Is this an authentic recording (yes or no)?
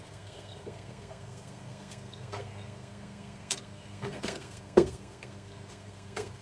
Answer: no